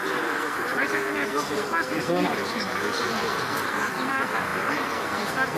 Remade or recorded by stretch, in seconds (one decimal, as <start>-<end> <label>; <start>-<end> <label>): 0.0-5.6 remade